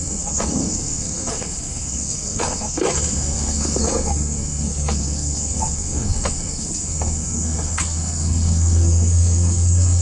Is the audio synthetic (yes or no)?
yes